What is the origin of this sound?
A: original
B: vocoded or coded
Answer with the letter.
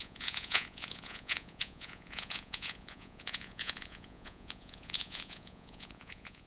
B